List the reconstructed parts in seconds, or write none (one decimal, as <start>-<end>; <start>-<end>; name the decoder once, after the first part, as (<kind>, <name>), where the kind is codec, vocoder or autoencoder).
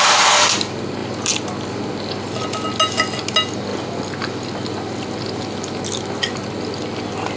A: none